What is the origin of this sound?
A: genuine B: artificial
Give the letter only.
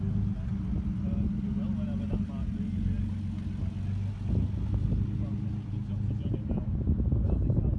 A